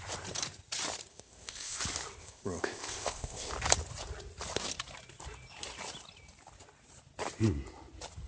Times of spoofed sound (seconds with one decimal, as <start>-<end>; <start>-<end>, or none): 1.1-1.8; 2.2-3.5

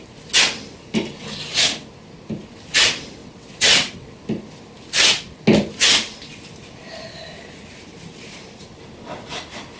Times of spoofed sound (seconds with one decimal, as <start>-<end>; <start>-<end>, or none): 3.2-4.2

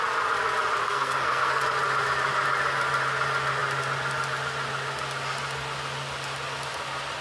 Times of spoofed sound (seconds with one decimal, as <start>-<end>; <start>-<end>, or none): 0.8-1.6